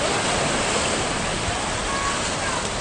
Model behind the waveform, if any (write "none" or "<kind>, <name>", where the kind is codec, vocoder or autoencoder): none